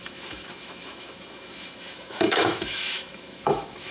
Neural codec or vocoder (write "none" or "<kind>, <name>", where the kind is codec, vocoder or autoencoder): autoencoder, DAC-VAE